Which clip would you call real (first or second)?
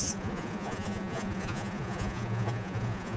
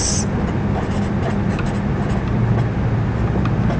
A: second